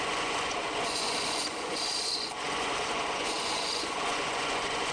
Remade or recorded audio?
remade